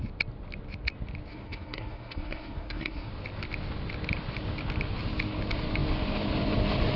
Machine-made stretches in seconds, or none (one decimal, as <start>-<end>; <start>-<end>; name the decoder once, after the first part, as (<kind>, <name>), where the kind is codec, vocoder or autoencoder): 1.3-3.1 (codec, SNAC)